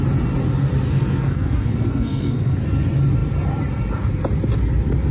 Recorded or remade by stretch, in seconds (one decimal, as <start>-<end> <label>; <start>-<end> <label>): 0.0-0.9 recorded; 0.9-2.6 remade; 2.6-5.1 recorded

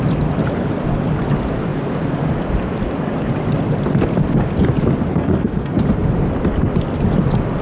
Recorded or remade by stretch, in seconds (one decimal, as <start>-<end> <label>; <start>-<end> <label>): 0.0-5.1 recorded; 5.1-5.8 remade; 5.8-7.6 recorded

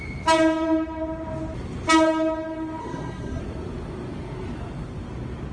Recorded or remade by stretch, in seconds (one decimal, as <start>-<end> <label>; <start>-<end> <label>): 0.0-2.8 recorded; 2.8-3.4 remade; 3.4-5.5 recorded